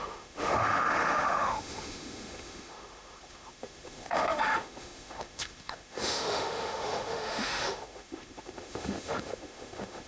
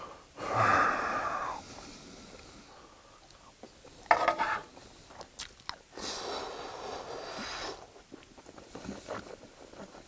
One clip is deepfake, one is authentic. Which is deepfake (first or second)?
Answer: first